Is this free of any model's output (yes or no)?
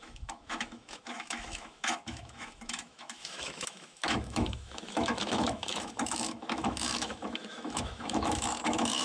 no